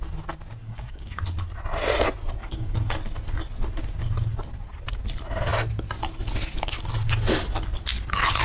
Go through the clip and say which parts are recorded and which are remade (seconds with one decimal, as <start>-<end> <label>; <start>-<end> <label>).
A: 0.0-0.6 recorded; 0.6-1.2 remade; 1.2-2.4 recorded; 2.4-3.0 remade; 3.0-8.4 recorded